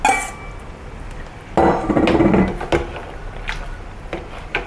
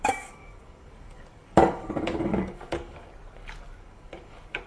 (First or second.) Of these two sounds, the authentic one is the first